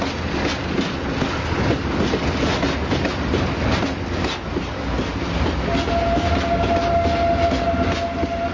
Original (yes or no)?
yes